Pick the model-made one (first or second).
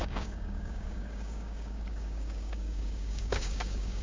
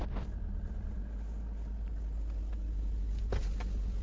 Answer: first